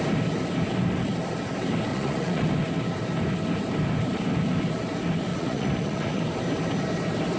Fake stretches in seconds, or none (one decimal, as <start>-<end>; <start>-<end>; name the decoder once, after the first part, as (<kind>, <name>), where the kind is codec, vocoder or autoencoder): 1.9-2.5 (vocoder, Vocos); 5.3-6.2